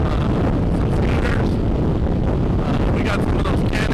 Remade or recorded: recorded